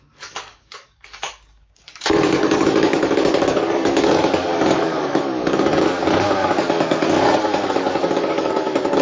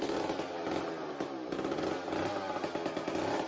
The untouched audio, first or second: second